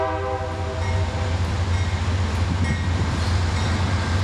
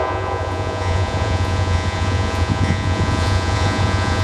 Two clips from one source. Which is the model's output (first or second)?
second